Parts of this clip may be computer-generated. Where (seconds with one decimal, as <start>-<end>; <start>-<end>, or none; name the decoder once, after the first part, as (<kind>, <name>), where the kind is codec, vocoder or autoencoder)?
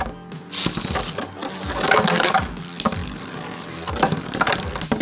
3.0-3.7 (vocoder, BigVGAN v2)